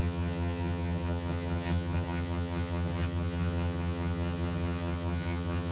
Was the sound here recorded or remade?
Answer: remade